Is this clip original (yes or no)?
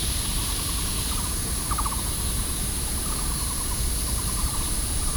no